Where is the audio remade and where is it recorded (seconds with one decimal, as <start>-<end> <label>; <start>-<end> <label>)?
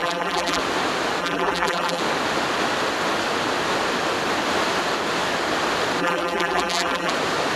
0.0-0.6 remade; 0.6-1.2 recorded; 1.2-2.0 remade; 2.0-6.0 recorded; 6.0-7.1 remade; 7.1-7.6 recorded